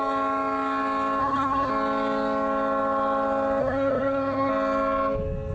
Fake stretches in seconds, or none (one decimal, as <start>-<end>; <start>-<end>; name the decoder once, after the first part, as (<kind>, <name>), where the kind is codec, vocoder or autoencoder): 1.2-1.7 (codec, SNAC); 3.6-4.5